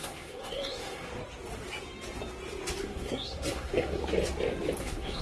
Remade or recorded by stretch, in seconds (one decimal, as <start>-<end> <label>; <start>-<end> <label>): 0.0-1.1 remade; 1.1-2.8 recorded; 2.8-4.0 remade; 4.0-4.8 recorded; 4.8-5.2 remade